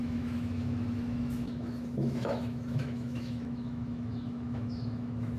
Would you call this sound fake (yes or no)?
yes